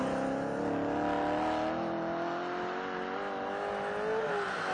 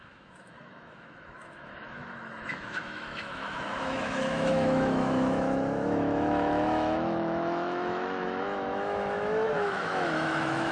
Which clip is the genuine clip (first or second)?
first